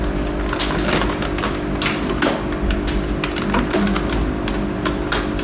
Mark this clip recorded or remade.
recorded